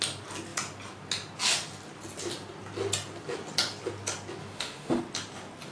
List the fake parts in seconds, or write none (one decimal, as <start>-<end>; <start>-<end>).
4.4-5.0